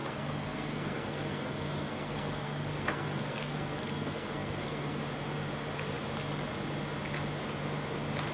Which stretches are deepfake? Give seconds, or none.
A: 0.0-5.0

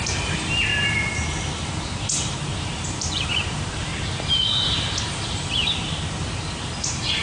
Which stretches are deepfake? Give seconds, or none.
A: 0.0-0.7; 2.6-3.9; 5.0-5.6; 6.8-7.2

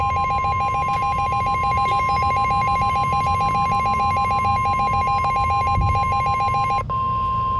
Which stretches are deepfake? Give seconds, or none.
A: none

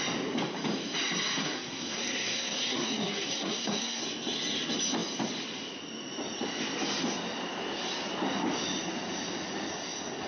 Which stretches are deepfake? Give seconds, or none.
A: 1.4-4.0

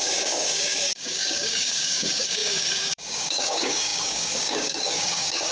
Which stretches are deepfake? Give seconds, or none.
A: 0.0-5.5

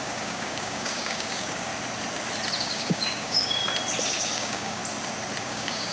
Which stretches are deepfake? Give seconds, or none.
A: 0.0-1.7; 2.6-3.6; 4.1-4.8; 5.4-5.9